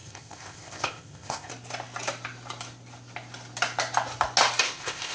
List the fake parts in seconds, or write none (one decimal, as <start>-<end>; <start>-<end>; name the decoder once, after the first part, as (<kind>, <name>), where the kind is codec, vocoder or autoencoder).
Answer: 0.0-1.5 (codec, ZipCodec); 4.6-5.1